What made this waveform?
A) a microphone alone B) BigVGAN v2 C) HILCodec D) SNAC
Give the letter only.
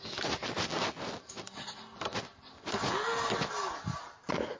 A